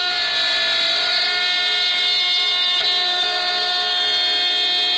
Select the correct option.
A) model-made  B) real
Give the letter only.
B